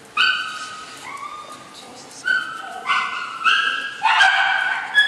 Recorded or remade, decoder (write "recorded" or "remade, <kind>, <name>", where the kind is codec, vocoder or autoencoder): recorded